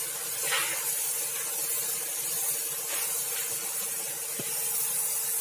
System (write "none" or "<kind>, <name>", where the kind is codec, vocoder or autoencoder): none